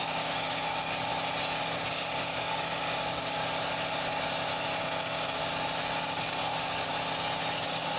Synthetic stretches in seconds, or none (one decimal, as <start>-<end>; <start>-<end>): 0.0-1.1; 1.6-3.4; 4.8-5.4; 6.0-6.9; 7.5-8.0